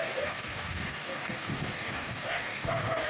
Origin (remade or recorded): remade